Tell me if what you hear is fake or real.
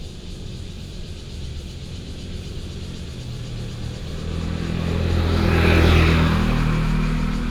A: real